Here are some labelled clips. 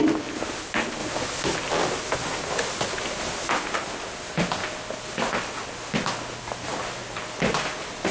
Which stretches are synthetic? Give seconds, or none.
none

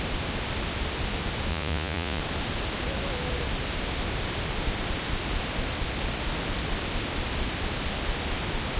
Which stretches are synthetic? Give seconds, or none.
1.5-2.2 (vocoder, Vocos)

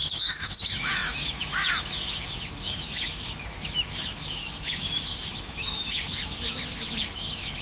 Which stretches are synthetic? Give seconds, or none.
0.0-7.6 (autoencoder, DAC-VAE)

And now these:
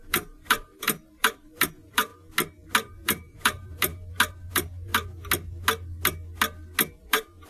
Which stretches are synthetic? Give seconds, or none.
0.0-2.1 (vocoder, BigVGAN v2); 2.9-3.9; 4.5-4.9; 7.0-7.5

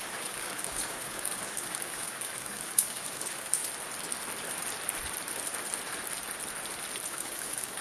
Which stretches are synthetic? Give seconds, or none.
0.0-3.6 (codec, DAC); 7.1-7.8